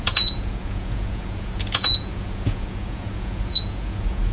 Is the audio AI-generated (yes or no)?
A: yes